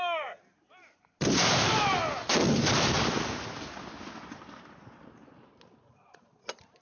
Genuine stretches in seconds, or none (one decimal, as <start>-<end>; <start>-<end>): 2.0-5.0